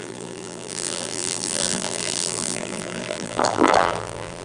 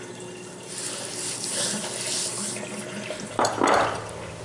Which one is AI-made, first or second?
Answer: first